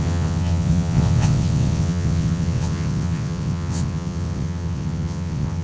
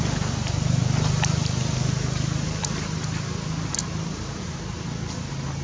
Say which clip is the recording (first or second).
second